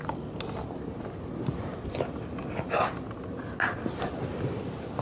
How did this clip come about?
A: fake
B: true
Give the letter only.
B